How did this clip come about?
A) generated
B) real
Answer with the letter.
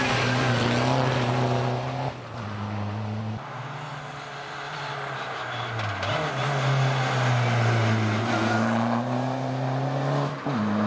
B